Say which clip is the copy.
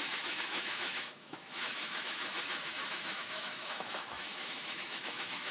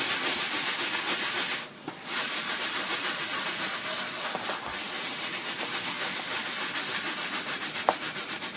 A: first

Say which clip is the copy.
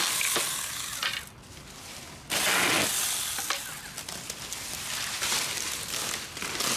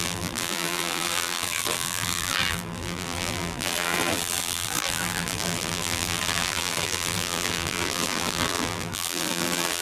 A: second